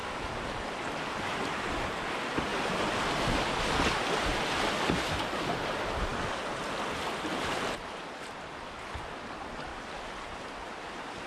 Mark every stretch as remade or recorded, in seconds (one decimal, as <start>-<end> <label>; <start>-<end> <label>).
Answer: 0.0-11.3 recorded